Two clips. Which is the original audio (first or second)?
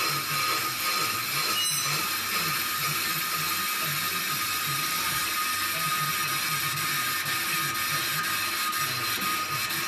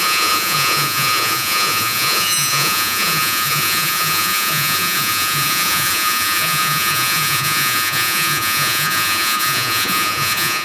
first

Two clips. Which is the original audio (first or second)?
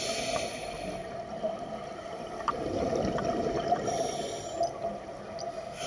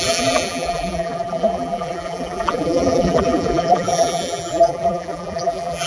first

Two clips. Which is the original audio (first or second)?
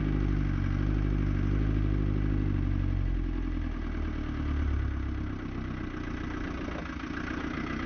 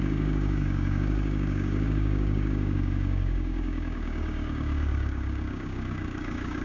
first